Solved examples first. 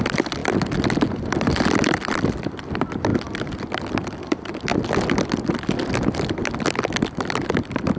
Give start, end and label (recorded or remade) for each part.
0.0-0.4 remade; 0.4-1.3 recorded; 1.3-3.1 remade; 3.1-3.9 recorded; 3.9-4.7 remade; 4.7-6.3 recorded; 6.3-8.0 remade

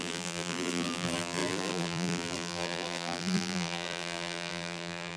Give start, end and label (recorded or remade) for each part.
0.0-5.2 remade

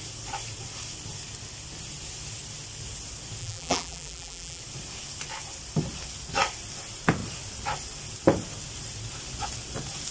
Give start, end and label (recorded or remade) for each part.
0.0-3.4 recorded; 3.4-4.6 remade; 4.6-10.1 recorded

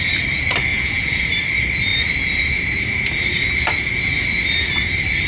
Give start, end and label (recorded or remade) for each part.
0.0-0.7 recorded; 0.7-1.2 remade; 1.2-5.3 recorded

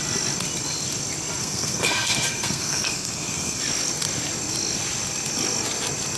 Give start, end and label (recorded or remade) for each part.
0.0-1.4 recorded; 1.4-3.6 remade; 3.6-6.2 recorded

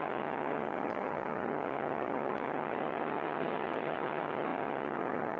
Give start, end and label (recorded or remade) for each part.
0.0-5.4 remade